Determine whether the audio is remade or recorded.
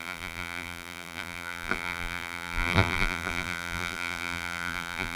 remade